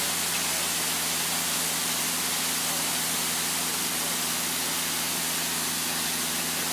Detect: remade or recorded recorded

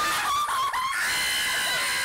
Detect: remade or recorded recorded